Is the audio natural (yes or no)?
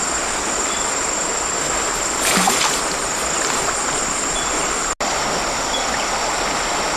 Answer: yes